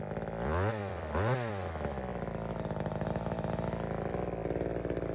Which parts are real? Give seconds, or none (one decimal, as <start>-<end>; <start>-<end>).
0.0-0.8; 1.5-2.1; 4.1-5.1